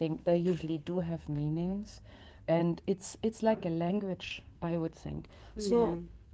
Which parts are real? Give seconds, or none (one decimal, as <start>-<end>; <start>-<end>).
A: 2.6-3.9